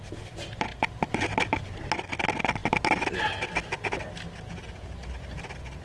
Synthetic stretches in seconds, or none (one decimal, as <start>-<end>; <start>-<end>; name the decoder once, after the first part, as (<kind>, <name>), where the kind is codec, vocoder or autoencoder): 0.7-1.2 (vocoder, BigVGAN v2)